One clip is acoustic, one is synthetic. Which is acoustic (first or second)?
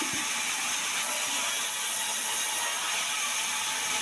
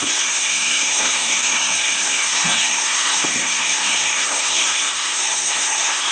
first